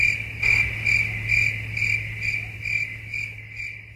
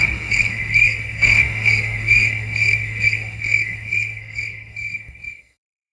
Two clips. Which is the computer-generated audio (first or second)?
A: second